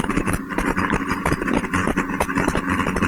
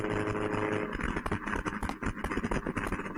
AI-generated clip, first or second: first